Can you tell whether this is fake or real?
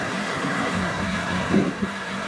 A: fake